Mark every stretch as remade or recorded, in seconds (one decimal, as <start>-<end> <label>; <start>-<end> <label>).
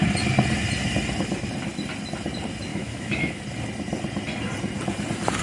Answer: 0.0-2.7 recorded; 2.7-3.4 remade; 3.4-5.4 recorded